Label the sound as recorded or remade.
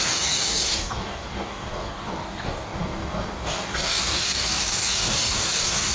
remade